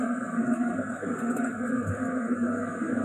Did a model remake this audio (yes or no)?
yes